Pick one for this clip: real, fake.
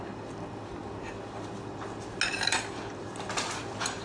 real